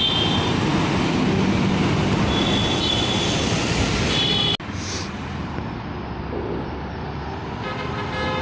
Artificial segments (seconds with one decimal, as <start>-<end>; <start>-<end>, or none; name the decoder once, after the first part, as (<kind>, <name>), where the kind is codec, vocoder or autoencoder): none